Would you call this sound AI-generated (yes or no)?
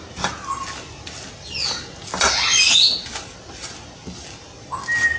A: no